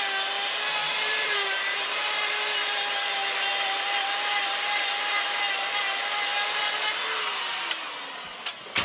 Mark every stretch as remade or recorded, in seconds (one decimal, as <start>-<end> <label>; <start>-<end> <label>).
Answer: 0.0-0.8 recorded; 0.8-5.4 remade; 5.4-8.8 recorded